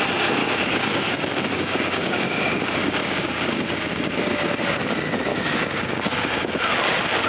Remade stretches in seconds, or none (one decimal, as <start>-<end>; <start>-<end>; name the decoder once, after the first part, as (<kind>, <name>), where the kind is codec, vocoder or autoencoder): 0.4-4.8 (codec, DAC); 5.3-6.8